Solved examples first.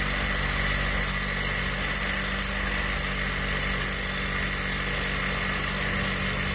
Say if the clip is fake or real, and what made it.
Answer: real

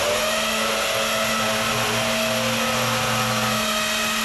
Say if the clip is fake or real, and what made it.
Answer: real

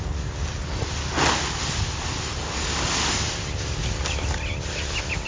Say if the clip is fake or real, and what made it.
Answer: real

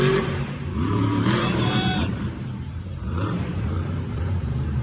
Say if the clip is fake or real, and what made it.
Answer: fake, vocoder, BigVGAN v2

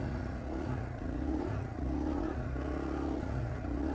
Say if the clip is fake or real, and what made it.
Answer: fake, vocoder, Vocos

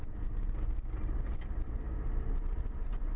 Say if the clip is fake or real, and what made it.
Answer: real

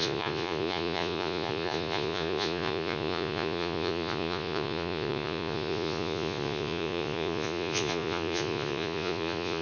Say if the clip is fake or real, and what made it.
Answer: fake, vocoder, Vocos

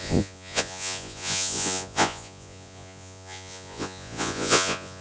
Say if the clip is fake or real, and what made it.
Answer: fake, vocoder, Vocos